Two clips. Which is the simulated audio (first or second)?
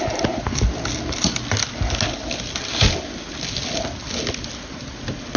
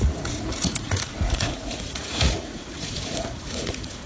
second